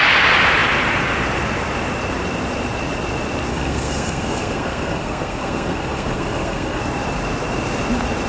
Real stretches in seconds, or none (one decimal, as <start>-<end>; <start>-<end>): 0.0-3.5; 6.8-8.3